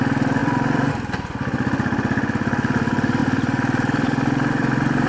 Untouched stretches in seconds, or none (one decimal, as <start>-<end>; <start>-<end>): 0.0-0.4; 0.9-3.2